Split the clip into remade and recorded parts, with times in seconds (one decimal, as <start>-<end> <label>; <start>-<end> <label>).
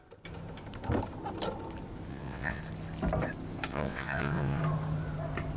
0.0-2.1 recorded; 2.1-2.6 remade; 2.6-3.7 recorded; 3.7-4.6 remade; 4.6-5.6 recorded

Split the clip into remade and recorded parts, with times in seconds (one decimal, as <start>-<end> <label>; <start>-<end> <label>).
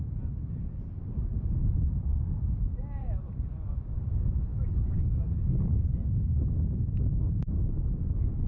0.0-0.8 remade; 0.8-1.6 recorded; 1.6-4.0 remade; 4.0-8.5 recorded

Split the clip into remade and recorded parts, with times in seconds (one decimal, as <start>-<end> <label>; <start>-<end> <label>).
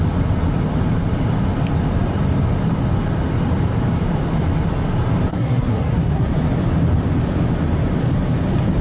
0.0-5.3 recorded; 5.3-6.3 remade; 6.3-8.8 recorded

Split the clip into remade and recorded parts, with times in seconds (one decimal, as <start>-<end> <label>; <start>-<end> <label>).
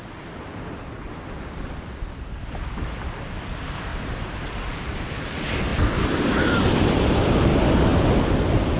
0.0-8.8 recorded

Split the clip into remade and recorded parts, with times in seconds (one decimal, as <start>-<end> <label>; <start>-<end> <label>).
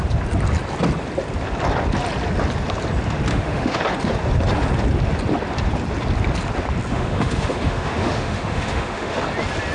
0.0-3.3 recorded; 3.3-3.8 remade; 3.8-6.9 recorded; 6.9-9.2 remade; 9.2-9.7 recorded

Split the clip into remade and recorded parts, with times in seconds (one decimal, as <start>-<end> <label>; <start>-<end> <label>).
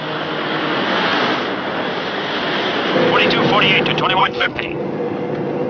0.0-4.2 recorded; 4.2-4.8 remade; 4.8-5.7 recorded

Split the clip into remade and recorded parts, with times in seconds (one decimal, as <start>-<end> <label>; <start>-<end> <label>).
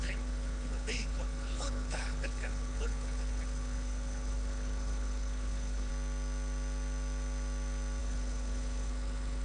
0.0-5.9 remade; 5.9-8.0 recorded; 8.0-9.4 remade